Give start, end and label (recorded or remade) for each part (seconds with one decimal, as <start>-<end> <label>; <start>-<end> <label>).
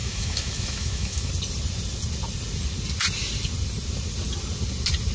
0.0-1.3 remade; 1.3-5.1 recorded